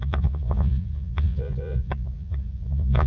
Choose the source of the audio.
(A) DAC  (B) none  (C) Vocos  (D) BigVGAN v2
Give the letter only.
C